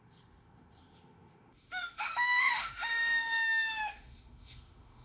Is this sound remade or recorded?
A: remade